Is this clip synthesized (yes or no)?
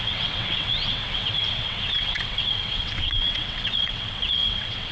yes